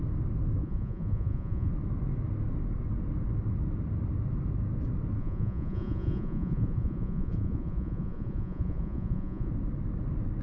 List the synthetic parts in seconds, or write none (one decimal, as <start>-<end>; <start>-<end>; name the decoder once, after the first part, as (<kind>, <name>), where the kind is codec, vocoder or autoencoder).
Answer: 0.6-1.7 (vocoder, Vocos); 5.2-9.5